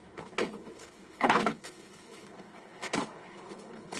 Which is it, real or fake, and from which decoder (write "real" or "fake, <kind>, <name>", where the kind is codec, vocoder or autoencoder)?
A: fake, codec, HILCodec